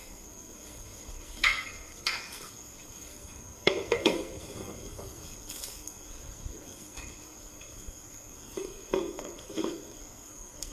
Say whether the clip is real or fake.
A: fake